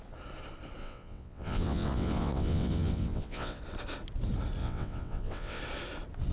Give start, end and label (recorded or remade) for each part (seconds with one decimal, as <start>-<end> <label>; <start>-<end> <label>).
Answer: 0.0-0.8 recorded; 0.8-3.6 remade; 3.6-4.6 recorded; 4.6-5.6 remade; 5.6-6.3 recorded